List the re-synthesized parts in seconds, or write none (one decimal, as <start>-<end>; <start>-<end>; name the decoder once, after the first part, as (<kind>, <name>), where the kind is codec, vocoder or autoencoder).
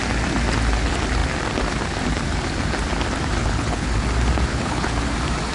3.4-4.0 (codec, HILCodec); 4.5-5.0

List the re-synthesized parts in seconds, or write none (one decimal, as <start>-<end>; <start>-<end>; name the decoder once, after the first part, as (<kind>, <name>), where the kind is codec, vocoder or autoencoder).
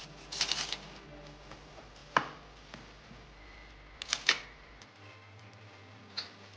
none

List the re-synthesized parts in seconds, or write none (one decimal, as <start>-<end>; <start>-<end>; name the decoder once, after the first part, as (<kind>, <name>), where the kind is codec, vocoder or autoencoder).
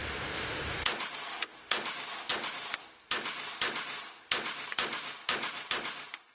none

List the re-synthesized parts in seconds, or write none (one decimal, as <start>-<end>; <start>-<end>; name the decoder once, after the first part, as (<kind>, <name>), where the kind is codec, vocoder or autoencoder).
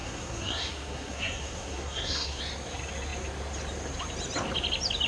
0.0-2.4 (codec, SNAC)